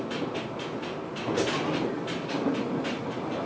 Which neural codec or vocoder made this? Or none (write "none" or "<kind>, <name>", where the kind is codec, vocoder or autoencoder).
none